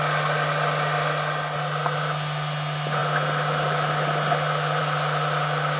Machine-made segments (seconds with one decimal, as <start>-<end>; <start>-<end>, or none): none